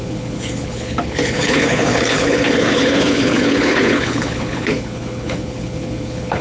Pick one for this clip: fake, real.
fake